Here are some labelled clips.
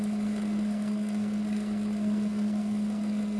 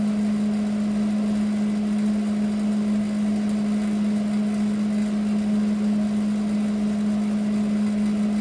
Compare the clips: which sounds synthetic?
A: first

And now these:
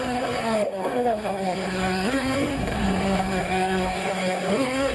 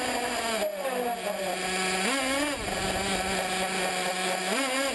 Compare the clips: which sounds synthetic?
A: first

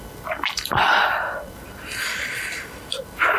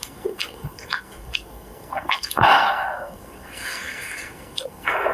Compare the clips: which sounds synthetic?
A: second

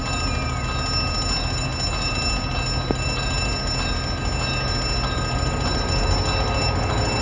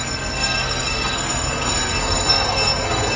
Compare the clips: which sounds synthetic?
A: second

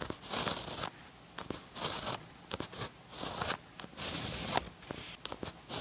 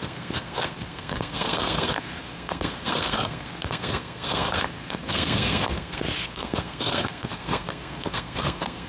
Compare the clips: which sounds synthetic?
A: second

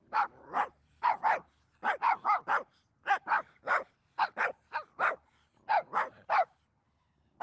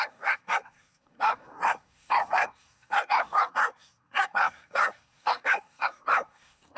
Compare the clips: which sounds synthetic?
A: second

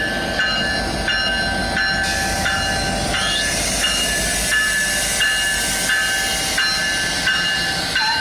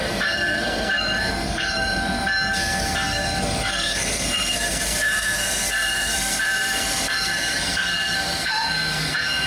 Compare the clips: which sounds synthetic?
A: second